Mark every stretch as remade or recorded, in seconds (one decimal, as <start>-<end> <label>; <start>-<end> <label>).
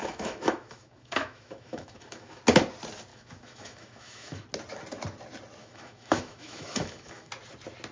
0.0-2.4 remade; 2.4-3.1 recorded; 3.1-4.4 remade; 4.4-5.6 recorded; 5.6-7.3 remade; 7.3-7.9 recorded